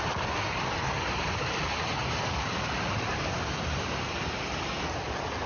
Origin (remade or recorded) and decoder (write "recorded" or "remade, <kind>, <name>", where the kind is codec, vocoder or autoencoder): recorded